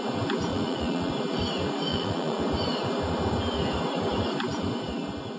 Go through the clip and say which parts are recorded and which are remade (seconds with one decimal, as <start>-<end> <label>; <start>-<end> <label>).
0.0-0.5 recorded; 0.5-1.1 remade; 1.1-1.9 recorded; 1.9-2.4 remade; 2.4-5.4 recorded

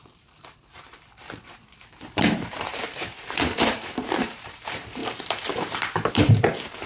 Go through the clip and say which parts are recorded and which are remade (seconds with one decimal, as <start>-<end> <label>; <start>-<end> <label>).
0.0-6.9 remade

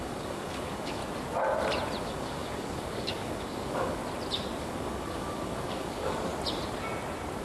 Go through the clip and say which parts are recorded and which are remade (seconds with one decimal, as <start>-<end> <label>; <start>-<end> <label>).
0.0-1.0 remade; 1.0-2.0 recorded; 2.0-4.0 remade; 4.0-4.6 recorded; 4.6-6.3 remade; 6.3-7.4 recorded

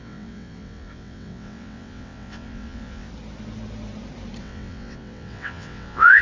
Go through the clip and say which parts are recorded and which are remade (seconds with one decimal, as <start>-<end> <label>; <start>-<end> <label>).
0.0-3.1 remade; 3.1-4.4 recorded; 4.4-6.2 remade

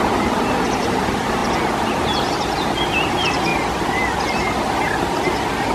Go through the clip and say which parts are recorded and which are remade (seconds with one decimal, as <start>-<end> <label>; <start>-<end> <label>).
0.0-5.7 recorded

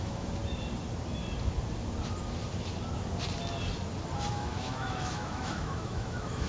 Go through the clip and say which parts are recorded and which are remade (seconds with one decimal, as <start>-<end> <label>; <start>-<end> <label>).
0.0-0.4 remade; 0.4-4.3 recorded; 4.3-6.5 remade

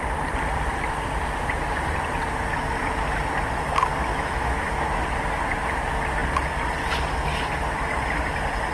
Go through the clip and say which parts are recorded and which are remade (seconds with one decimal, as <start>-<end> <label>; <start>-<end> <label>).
0.0-4.1 recorded; 4.1-5.0 remade; 5.0-8.7 recorded

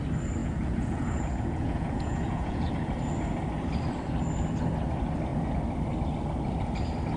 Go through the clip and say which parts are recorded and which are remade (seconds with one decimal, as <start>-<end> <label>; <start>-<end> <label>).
0.0-0.4 recorded; 0.4-2.7 remade; 2.7-7.2 recorded